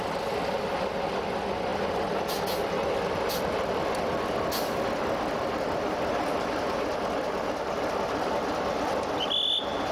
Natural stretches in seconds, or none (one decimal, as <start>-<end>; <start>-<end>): 0.0-9.9